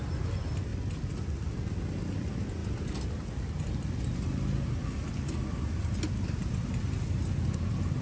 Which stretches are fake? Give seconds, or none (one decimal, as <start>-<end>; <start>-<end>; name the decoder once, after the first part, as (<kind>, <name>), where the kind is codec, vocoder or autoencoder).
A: none